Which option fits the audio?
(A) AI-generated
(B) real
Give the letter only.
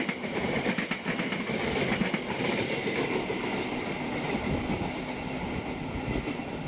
B